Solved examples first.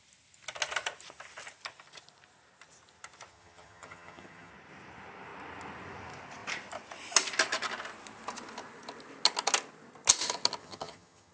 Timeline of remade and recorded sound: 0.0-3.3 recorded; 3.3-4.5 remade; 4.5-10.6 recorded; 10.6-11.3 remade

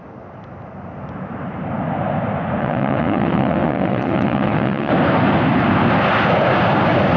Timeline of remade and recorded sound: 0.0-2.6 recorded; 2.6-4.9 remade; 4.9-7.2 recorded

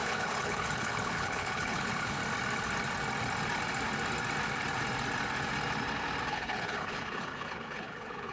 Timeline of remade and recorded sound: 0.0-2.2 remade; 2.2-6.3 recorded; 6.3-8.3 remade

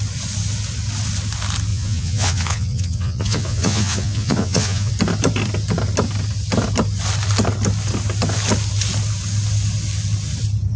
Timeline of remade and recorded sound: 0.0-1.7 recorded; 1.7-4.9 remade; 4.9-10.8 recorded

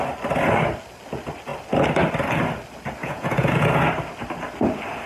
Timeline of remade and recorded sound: 0.0-3.0 recorded; 3.0-3.7 remade; 3.7-5.1 recorded